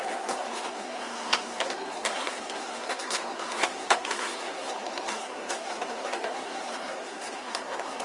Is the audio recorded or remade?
remade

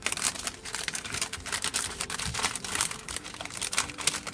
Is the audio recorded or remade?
remade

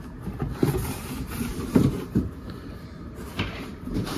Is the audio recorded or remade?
remade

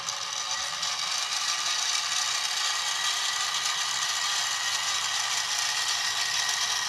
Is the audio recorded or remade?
recorded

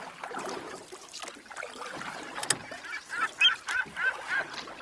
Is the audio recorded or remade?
recorded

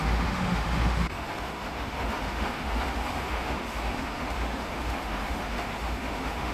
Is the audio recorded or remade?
remade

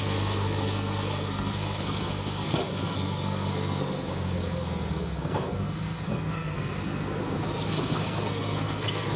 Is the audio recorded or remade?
remade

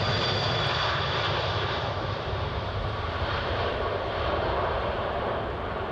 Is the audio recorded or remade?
remade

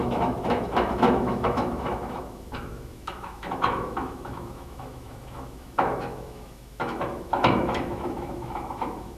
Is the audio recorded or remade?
remade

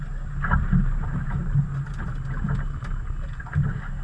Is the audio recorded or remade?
recorded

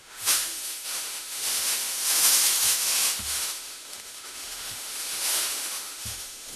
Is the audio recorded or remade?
remade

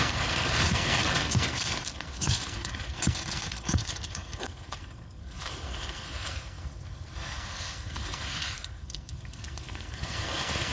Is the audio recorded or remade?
remade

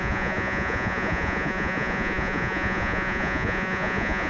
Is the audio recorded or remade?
remade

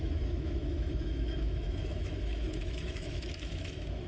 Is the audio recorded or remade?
remade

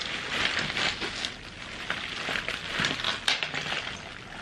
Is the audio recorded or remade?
recorded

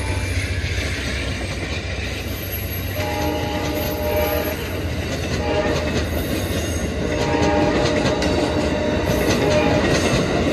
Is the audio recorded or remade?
recorded